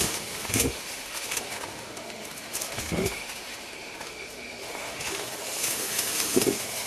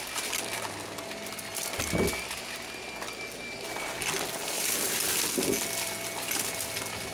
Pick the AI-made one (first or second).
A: first